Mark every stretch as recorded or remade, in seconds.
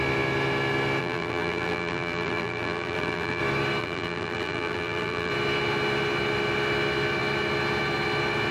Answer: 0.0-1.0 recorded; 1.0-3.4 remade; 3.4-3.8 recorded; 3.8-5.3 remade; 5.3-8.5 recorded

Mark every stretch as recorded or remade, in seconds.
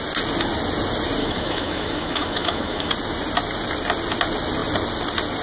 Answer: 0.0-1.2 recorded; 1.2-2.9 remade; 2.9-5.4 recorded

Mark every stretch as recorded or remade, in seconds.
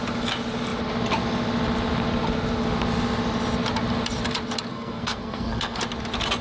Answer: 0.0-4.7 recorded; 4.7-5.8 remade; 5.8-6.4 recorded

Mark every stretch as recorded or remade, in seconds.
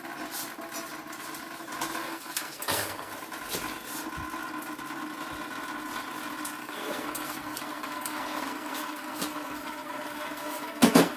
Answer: 0.0-2.0 recorded; 2.0-3.1 remade; 3.1-6.6 recorded; 6.6-11.2 remade